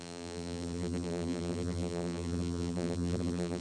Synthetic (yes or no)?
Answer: yes